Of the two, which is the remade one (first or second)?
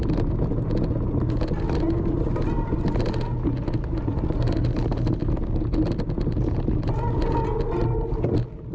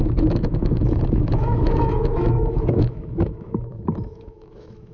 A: second